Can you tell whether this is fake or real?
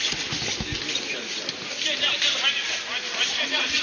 real